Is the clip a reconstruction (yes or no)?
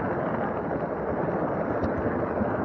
no